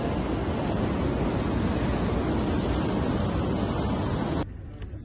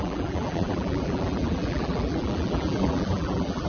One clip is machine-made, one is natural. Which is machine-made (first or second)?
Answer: second